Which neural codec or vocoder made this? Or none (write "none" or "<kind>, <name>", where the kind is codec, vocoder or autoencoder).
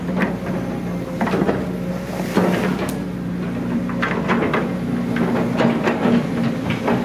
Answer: none